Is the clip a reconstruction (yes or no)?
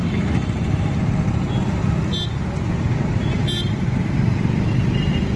no